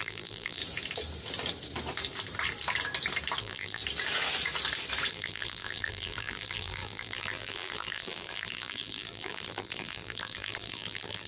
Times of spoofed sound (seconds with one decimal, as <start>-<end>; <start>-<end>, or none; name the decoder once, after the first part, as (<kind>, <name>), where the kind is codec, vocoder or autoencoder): 0.0-0.6 (vocoder, BigVGAN v2); 3.4-3.8; 5.1-11.3